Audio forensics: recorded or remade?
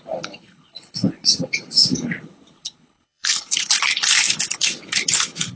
remade